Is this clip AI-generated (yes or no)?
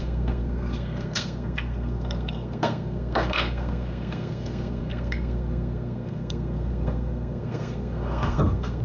yes